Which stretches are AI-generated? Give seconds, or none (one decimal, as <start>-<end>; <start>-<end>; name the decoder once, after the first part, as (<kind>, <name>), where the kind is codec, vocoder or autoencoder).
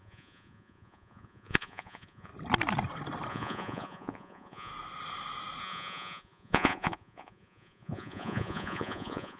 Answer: 0.0-2.3 (vocoder, Vocos); 3.3-4.7; 5.6-9.4